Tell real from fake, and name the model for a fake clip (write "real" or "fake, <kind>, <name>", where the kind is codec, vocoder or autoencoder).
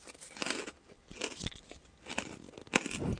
real